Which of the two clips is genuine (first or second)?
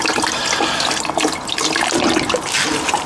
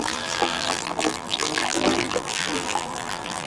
first